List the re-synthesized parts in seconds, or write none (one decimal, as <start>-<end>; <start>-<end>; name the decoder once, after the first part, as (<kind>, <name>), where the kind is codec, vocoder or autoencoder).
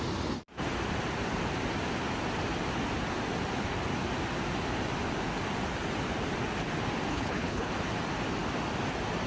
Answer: 7.1-7.7 (codec, HILCodec)